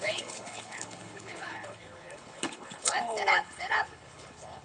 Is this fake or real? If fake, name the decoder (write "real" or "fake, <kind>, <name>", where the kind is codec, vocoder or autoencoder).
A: fake, codec, HILCodec